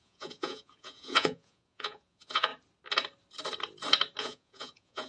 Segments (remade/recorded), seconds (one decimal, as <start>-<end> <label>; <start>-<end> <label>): 0.0-2.5 remade; 2.5-4.2 recorded; 4.2-5.1 remade